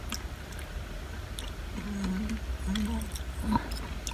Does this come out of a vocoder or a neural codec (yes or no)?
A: no